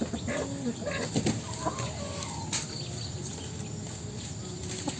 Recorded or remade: recorded